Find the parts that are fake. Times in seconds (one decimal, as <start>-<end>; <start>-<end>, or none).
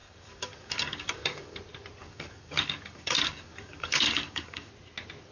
0.0-1.6; 2.0-4.7